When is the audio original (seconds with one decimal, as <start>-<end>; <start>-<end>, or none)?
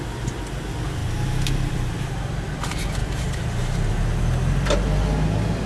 0.0-1.0; 2.1-3.0; 3.9-5.7